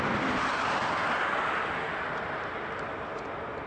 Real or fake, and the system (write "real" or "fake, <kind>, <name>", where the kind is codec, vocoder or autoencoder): real